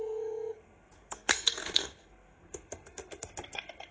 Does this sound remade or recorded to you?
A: remade